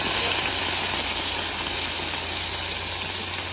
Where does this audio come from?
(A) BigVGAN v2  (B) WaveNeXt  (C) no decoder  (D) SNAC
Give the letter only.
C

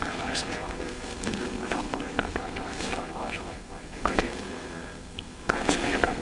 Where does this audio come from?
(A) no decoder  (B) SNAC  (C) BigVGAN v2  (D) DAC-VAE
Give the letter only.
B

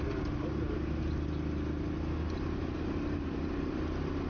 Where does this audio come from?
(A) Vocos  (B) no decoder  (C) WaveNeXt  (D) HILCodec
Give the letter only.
B